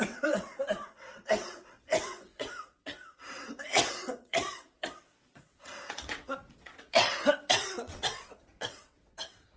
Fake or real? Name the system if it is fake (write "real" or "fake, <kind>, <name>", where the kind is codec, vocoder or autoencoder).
fake, vocoder, WaveNeXt